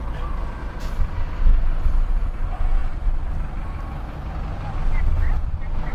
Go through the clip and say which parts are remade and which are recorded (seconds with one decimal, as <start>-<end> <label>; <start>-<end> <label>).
0.0-5.9 recorded